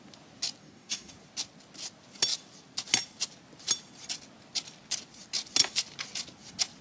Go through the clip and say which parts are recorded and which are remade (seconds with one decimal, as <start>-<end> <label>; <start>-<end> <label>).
0.0-0.6 recorded; 0.6-1.1 remade; 1.1-6.8 recorded